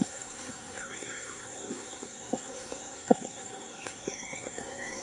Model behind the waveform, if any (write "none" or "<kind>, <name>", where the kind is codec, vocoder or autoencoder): codec, SNAC